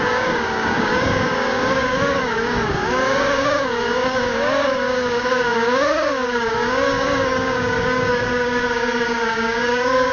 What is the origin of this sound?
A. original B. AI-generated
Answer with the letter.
B